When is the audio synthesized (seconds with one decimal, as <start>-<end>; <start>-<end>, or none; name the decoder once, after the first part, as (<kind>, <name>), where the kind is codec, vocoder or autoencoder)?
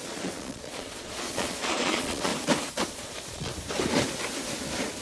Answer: 0.0-2.3 (vocoder, Vocos); 2.9-3.5